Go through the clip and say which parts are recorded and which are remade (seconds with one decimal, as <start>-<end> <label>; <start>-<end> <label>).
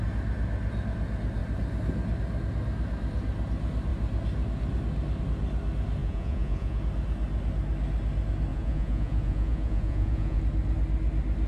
0.0-6.0 recorded; 6.0-6.8 remade; 6.8-8.5 recorded; 8.5-10.4 remade; 10.4-11.5 recorded